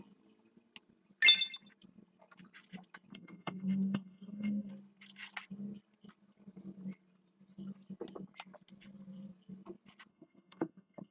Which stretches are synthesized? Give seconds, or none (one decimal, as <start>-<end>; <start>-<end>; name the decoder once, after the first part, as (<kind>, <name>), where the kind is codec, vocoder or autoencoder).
3.1-4.7 (codec, SNAC); 10.1-11.1